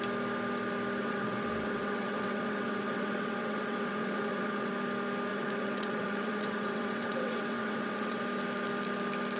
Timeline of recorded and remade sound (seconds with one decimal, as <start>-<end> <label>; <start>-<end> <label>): 0.0-1.0 recorded; 1.0-4.7 remade; 4.7-5.3 recorded; 5.3-8.2 remade; 8.2-9.4 recorded